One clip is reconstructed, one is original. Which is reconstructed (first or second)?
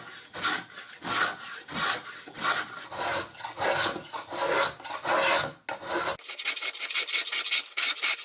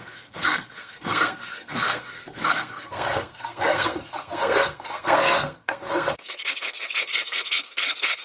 second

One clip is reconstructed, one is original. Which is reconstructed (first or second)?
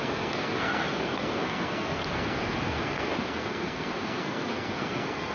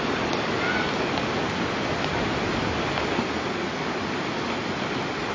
first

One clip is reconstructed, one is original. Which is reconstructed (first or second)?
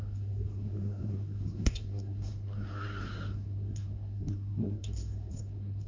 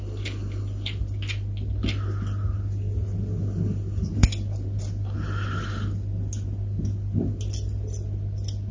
first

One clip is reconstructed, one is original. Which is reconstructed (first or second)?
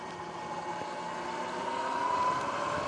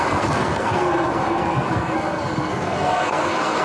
second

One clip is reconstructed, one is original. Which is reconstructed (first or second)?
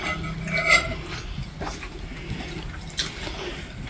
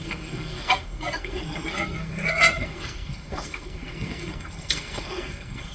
second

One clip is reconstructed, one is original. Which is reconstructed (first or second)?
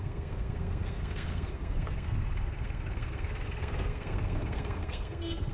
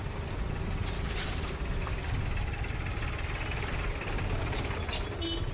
first